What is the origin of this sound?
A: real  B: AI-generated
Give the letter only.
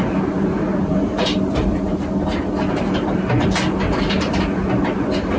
A